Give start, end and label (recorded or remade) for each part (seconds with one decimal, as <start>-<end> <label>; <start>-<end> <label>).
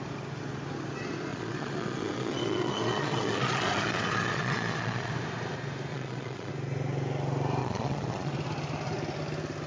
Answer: 0.0-1.3 recorded; 1.3-5.1 remade; 5.1-5.9 recorded; 5.9-6.5 remade; 6.5-7.6 recorded; 7.6-8.3 remade; 8.3-9.7 recorded